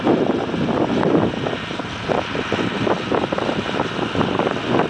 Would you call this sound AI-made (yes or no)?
no